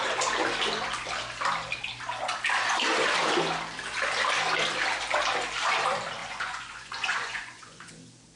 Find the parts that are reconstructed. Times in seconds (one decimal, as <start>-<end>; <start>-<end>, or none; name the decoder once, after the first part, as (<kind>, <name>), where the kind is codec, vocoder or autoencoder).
6.2-7.9 (vocoder, Vocos)